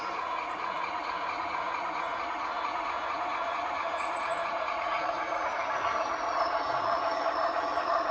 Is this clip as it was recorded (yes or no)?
no